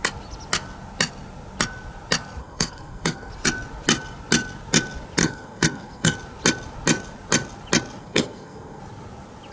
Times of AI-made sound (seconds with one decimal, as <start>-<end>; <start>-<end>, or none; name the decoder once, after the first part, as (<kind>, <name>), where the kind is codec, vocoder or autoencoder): 2.4-3.3 (codec, SNAC); 5.2-6.1; 8.0-8.8